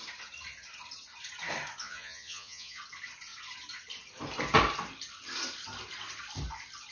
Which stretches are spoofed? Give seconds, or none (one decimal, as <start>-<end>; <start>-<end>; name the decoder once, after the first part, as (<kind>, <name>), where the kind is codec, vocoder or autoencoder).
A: 1.8-2.8 (vocoder, Vocos)